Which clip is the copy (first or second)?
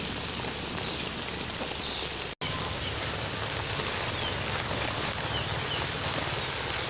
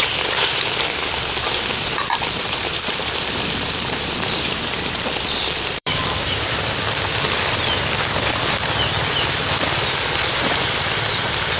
second